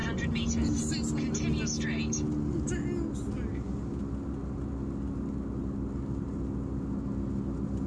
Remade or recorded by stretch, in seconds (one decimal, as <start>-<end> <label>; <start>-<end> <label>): 0.0-7.9 recorded